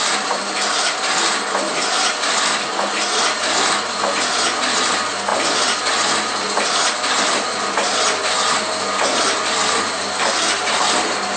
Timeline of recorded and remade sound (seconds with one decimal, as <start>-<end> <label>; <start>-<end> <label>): 0.0-11.4 recorded